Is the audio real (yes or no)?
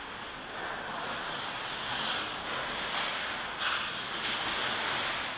yes